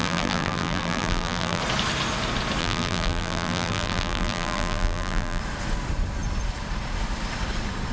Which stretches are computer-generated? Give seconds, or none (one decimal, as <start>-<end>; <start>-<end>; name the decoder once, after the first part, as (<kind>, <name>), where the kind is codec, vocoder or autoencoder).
0.0-1.6 (vocoder, BigVGAN v2); 2.6-5.4